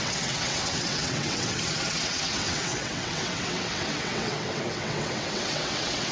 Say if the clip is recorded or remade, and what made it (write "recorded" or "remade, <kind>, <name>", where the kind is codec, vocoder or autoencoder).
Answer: remade, vocoder, WaveNeXt